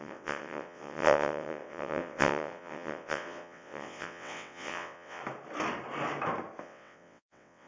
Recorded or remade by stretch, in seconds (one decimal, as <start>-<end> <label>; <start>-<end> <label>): 0.0-5.2 remade; 5.2-6.6 recorded; 6.6-7.7 remade